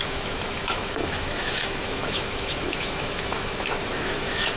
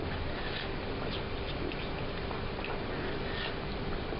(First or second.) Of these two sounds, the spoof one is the first